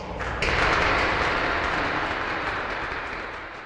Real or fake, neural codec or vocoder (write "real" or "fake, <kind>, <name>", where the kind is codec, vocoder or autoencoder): fake, vocoder, BigVGAN v2